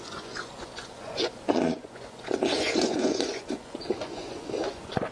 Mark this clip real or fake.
fake